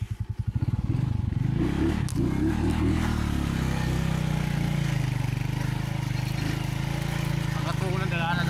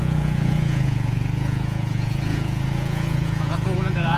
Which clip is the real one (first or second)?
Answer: first